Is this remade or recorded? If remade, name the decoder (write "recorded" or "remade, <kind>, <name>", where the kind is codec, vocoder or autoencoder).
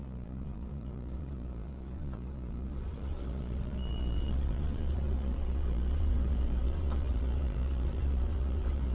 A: remade, vocoder, Vocos